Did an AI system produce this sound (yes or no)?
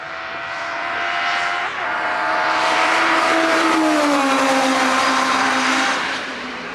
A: yes